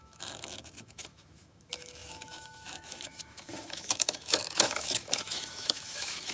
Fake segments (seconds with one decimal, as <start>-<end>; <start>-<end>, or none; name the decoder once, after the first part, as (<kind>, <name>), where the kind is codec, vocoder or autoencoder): 0.0-6.3 (autoencoder, DAC-VAE)